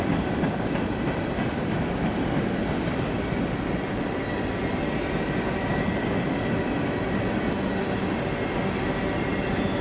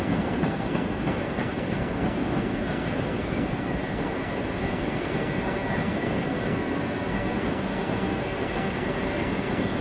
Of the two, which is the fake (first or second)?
second